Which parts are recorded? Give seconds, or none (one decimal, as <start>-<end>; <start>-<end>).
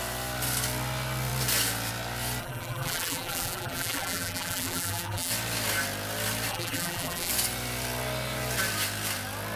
0.0-2.4; 5.3-6.5; 7.3-9.6